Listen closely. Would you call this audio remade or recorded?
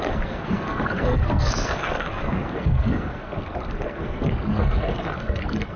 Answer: remade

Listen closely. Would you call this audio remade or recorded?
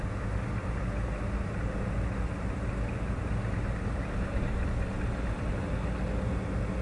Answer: recorded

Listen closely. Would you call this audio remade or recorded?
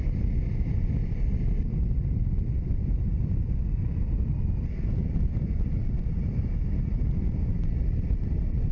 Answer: recorded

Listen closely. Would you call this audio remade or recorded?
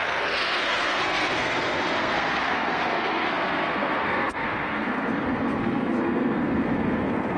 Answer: remade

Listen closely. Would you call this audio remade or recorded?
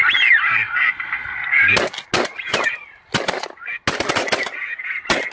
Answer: recorded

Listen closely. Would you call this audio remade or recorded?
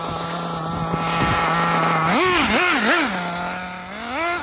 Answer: recorded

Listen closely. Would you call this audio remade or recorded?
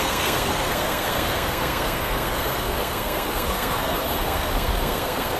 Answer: remade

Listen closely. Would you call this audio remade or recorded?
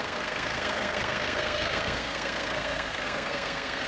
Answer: remade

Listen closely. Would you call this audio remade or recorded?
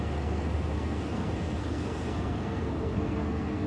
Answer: remade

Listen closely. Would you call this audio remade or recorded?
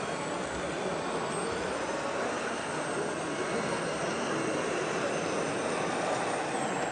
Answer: recorded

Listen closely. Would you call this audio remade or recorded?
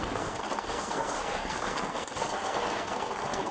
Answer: remade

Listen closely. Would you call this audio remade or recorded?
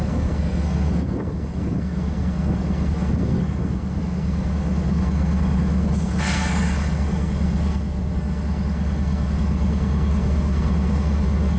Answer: remade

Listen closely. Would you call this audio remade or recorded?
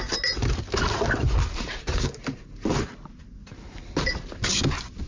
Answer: recorded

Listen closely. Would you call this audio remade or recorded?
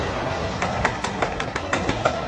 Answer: remade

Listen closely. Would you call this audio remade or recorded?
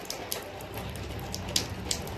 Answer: recorded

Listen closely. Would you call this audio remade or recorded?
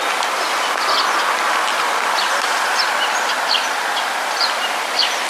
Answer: recorded